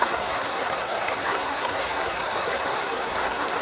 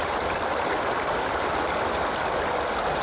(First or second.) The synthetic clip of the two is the first